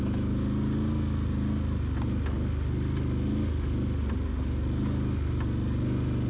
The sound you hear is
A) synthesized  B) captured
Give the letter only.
B